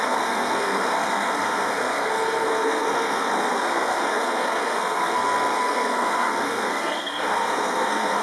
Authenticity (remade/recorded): remade